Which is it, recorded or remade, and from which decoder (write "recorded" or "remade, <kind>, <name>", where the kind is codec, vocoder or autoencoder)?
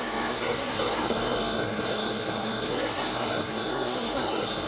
remade, codec, SNAC